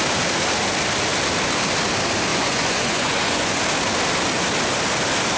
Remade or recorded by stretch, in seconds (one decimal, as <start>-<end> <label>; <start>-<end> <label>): 0.0-2.3 recorded; 2.3-3.6 remade; 3.6-5.4 recorded